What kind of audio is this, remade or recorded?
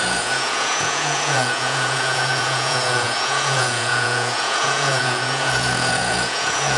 remade